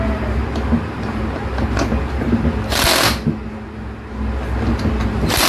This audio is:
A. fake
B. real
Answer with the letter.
B